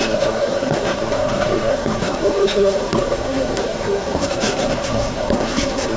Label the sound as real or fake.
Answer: fake